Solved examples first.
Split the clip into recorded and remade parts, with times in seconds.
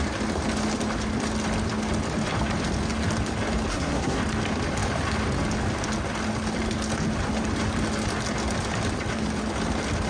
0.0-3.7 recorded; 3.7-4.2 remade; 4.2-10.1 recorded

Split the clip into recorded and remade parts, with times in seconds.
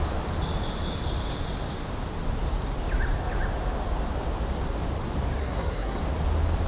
0.0-5.4 recorded; 5.4-6.0 remade; 6.0-6.7 recorded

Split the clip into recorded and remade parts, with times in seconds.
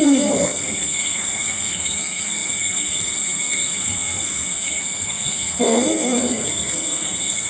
0.0-7.5 remade